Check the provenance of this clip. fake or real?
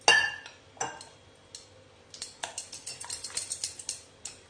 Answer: real